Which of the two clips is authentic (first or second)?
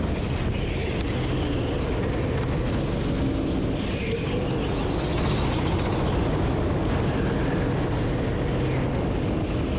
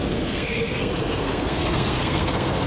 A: first